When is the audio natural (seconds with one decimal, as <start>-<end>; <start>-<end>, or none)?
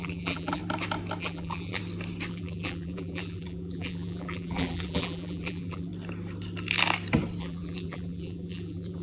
0.6-1.2; 1.8-2.3; 5.9-7.4